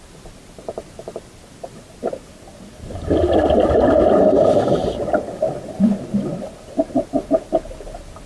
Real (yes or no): yes